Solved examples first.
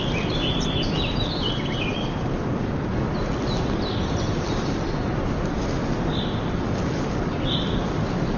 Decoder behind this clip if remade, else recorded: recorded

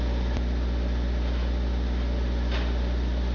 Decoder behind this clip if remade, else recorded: recorded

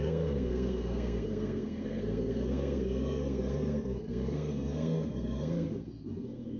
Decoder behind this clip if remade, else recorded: remade, codec, SNAC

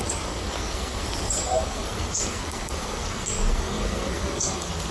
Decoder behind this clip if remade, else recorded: remade, codec, SNAC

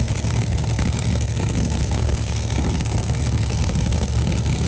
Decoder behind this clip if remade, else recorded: remade, codec, SNAC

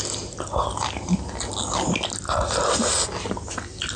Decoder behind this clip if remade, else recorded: recorded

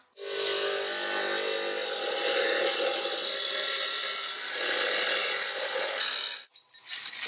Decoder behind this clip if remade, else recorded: recorded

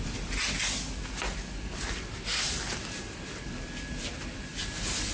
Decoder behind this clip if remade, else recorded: recorded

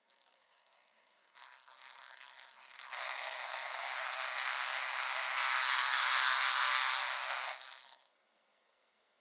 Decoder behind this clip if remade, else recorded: remade, codec, SNAC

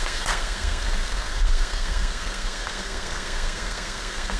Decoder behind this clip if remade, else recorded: remade, codec, SNAC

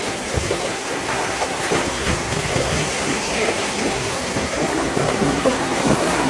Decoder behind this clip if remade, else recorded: remade, codec, SNAC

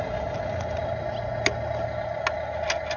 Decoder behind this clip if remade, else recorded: recorded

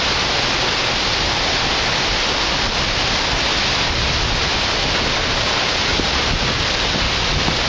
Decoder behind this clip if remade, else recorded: recorded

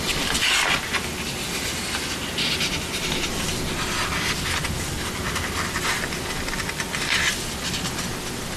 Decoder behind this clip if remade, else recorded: recorded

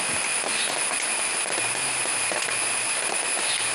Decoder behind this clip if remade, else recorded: recorded